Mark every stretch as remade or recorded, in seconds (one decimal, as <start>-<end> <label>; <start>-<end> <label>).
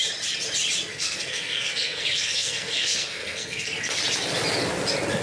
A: 0.0-0.9 recorded; 0.9-4.0 remade; 4.0-5.2 recorded